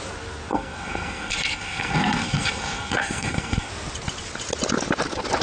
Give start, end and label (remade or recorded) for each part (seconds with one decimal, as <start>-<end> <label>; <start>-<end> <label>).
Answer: 0.0-0.5 recorded; 0.5-3.7 remade; 3.7-5.4 recorded